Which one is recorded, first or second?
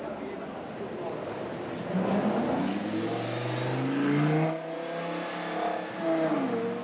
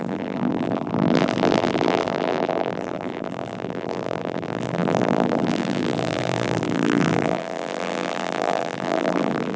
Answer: first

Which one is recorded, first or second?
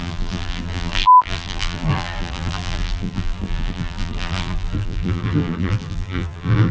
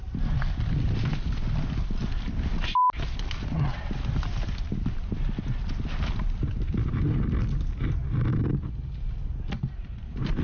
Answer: second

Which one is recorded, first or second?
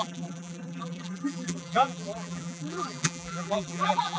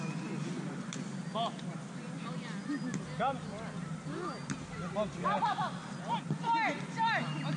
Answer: second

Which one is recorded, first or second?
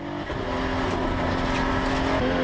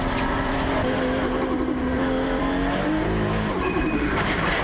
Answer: first